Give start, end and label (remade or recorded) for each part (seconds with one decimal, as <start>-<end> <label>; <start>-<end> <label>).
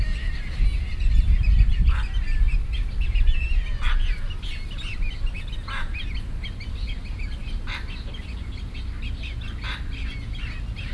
0.0-10.9 recorded